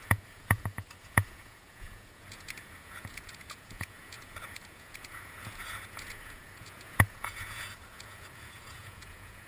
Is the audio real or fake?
fake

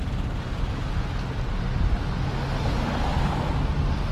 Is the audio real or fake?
real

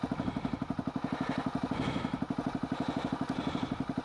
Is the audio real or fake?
real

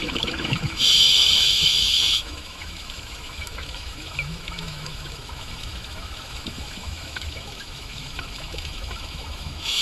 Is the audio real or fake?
fake